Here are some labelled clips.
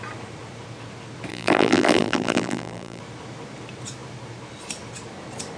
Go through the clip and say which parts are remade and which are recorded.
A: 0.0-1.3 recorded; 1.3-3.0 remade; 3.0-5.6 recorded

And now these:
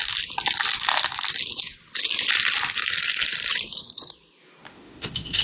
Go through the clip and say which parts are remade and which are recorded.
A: 0.0-4.7 recorded; 4.7-5.4 remade

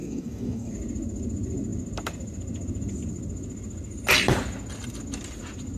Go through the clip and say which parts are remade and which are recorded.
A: 0.0-0.7 remade; 0.7-5.8 recorded

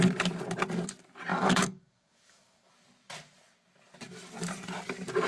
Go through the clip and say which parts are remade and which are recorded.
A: 0.0-1.3 recorded; 1.3-2.7 remade; 2.7-5.3 recorded

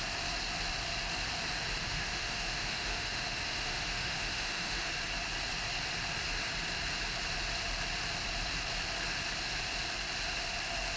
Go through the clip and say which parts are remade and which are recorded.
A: 0.0-1.8 recorded; 1.8-4.9 remade; 4.9-11.0 recorded

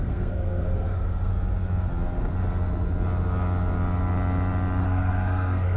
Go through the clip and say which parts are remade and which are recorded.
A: 0.0-1.3 remade; 1.3-4.8 recorded; 4.8-5.8 remade